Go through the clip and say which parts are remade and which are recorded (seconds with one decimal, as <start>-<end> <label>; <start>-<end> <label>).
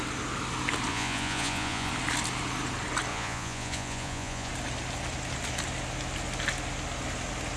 0.0-0.9 recorded; 0.9-1.9 remade; 1.9-3.1 recorded; 3.1-4.5 remade; 4.5-7.6 recorded